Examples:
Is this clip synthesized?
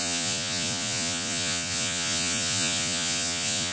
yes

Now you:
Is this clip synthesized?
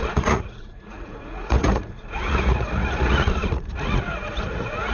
yes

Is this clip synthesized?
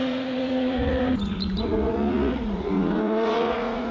yes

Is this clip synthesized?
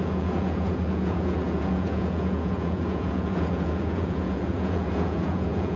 yes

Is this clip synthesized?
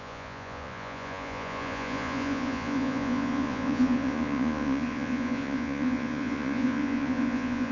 yes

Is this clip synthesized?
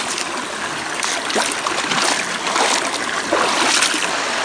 no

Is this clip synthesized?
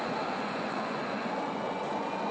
yes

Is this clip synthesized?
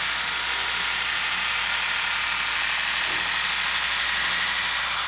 no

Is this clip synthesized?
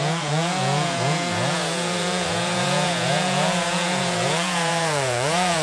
yes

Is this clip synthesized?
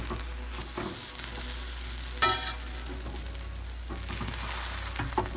no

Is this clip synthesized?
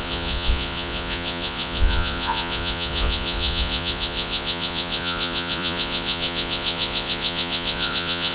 yes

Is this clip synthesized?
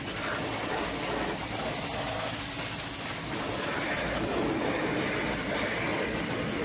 no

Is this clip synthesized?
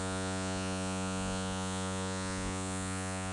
yes